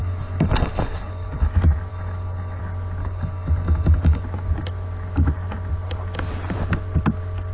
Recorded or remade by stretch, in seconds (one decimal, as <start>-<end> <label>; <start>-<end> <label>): 0.0-1.5 remade; 1.5-1.9 recorded; 1.9-2.6 remade; 2.6-3.0 recorded; 3.0-4.2 remade; 4.2-7.5 recorded